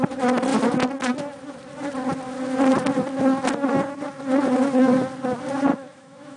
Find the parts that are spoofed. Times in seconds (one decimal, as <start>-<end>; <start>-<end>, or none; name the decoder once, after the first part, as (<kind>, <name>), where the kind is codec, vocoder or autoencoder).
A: 5.7-6.4 (autoencoder, DAC-VAE)